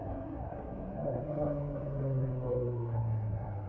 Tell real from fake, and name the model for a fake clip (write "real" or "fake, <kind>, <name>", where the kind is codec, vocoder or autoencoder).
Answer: fake, codec, SNAC